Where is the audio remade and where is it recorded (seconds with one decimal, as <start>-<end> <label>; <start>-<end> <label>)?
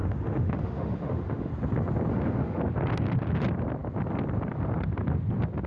0.0-1.5 remade; 1.5-2.1 recorded; 2.1-2.6 remade; 2.6-5.7 recorded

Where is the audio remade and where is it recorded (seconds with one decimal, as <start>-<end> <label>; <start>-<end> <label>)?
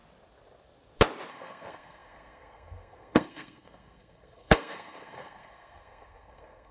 0.0-1.3 recorded; 1.3-6.7 remade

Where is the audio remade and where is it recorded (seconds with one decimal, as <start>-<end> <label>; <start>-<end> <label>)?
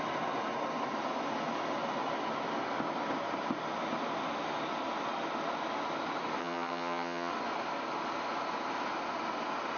0.0-6.4 recorded; 6.4-7.3 remade; 7.3-9.8 recorded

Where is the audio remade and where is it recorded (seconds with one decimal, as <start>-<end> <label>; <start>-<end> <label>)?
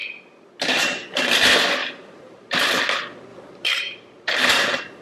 0.0-1.8 recorded; 1.8-2.8 remade; 2.8-3.3 recorded; 3.3-4.4 remade; 4.4-5.0 recorded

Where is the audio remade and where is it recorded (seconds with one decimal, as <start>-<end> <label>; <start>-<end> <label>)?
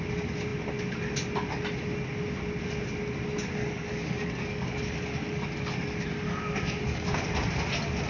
0.0-3.6 recorded; 3.6-7.1 remade; 7.1-8.1 recorded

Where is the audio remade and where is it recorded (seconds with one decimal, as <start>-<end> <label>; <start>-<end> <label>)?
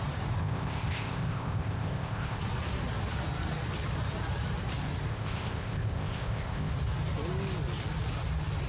0.0-0.4 recorded; 0.4-2.4 remade; 2.4-5.1 recorded; 5.1-6.7 remade; 6.7-8.7 recorded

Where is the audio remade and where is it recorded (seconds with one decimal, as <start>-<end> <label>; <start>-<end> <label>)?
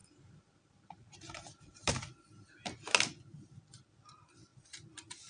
0.0-1.9 remade; 1.9-5.3 recorded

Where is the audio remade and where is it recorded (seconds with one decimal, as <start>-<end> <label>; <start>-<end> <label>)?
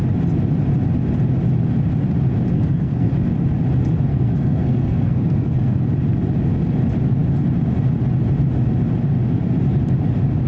0.0-2.5 recorded; 2.5-3.1 remade; 3.1-4.1 recorded; 4.1-5.8 remade; 5.8-10.5 recorded